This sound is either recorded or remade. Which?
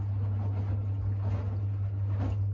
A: recorded